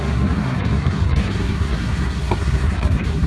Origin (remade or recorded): remade